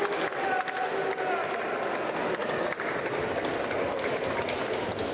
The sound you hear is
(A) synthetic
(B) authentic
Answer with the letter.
B